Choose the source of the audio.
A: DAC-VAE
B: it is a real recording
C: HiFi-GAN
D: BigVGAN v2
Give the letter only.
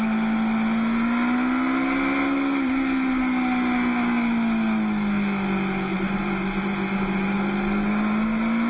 B